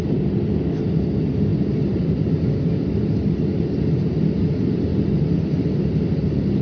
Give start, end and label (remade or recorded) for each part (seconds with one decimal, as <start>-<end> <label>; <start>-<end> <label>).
0.0-6.6 recorded